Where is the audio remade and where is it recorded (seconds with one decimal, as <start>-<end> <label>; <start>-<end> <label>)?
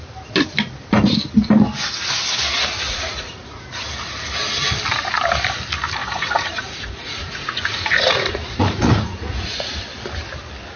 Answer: 0.0-2.9 recorded; 2.9-3.6 remade; 3.6-6.0 recorded; 6.0-9.8 remade; 9.8-10.8 recorded